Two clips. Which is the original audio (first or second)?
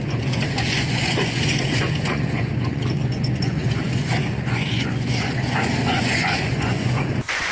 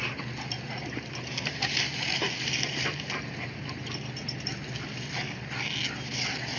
second